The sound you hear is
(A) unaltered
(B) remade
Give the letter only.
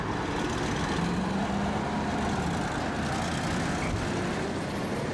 A